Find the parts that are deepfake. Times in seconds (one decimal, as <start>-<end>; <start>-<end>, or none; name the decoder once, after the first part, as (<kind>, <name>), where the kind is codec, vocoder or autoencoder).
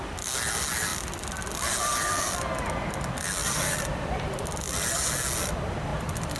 0.9-2.7 (vocoder, BigVGAN v2); 3.4-5.1; 5.9-6.4